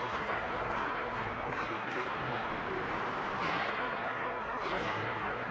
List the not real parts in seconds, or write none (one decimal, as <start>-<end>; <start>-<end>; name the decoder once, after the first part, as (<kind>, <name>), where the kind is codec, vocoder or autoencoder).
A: 0.0-2.5 (codec, SNAC); 3.4-5.5